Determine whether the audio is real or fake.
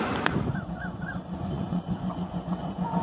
fake